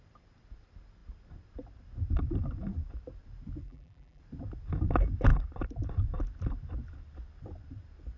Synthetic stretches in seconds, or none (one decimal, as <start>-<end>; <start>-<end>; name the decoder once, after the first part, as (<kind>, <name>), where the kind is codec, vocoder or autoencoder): 3.6-4.2 (vocoder, BigVGAN v2)